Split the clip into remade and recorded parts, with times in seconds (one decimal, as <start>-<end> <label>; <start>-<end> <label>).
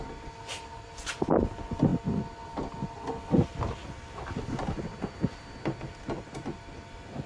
0.0-7.3 recorded